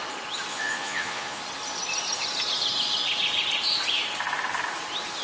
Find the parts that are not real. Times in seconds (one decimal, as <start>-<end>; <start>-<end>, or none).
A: 0.5-1.4

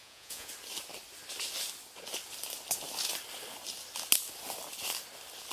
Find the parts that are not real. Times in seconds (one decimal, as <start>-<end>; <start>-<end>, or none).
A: 0.0-0.5

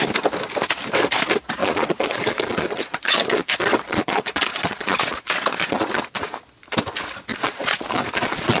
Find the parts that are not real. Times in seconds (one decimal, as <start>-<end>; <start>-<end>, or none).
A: 1.6-6.3; 7.3-8.6

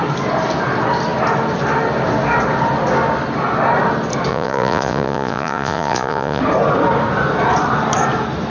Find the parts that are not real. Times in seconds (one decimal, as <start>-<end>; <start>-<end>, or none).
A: 4.3-6.4

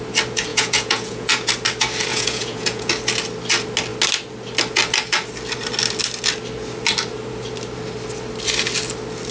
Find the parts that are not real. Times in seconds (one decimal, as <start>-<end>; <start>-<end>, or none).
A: 0.5-1.5; 2.1-2.9

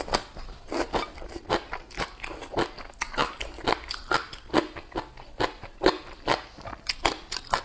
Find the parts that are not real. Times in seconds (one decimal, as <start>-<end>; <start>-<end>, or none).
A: none